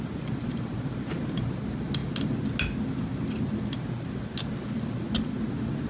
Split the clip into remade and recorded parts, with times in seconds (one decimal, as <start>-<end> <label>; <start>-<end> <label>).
0.0-5.9 recorded